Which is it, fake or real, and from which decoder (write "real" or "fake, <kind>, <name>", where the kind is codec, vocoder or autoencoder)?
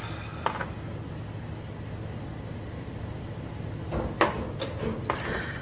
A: real